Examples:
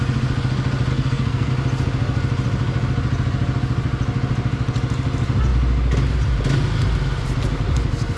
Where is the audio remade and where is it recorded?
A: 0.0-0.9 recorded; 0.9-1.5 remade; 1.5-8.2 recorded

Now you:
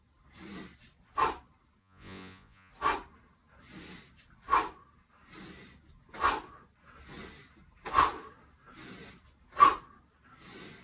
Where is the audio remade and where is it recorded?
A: 0.0-1.8 recorded; 1.8-2.7 remade; 2.7-10.8 recorded

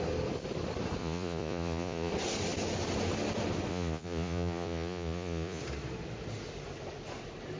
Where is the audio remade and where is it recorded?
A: 0.0-1.0 recorded; 1.0-2.1 remade; 2.1-3.7 recorded; 3.7-5.6 remade; 5.6-7.6 recorded

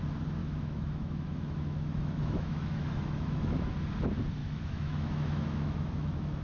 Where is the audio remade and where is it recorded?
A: 0.0-0.4 recorded; 0.4-3.7 remade; 3.7-4.4 recorded; 4.4-6.4 remade

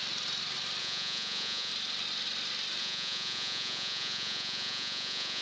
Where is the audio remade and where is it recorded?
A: 0.0-0.8 recorded; 0.8-1.7 remade; 1.7-2.8 recorded; 2.8-5.4 remade

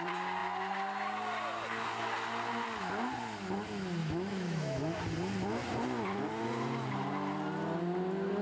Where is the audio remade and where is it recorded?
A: 0.0-4.0 recorded; 4.0-5.0 remade; 5.0-8.4 recorded

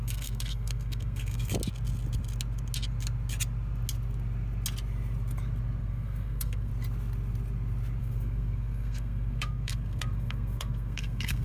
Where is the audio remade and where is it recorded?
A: 0.0-1.5 remade; 1.5-5.8 recorded; 5.8-6.7 remade; 6.7-8.0 recorded; 8.0-11.4 remade

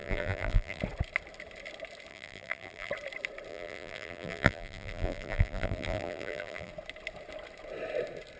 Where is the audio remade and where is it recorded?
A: 0.0-0.8 remade; 0.8-2.1 recorded; 2.1-2.9 remade; 2.9-3.5 recorded; 3.5-6.7 remade; 6.7-8.4 recorded